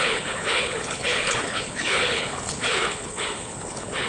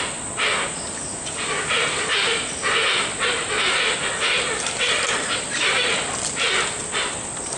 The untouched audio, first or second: second